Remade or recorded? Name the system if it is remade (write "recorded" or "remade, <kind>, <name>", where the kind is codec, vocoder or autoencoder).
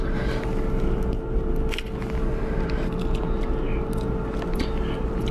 recorded